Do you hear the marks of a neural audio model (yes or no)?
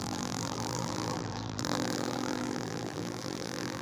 yes